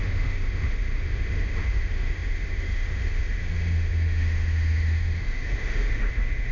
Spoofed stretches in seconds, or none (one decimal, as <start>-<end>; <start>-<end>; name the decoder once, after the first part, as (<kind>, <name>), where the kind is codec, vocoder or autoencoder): 0.0-6.5 (autoencoder, DAC-VAE)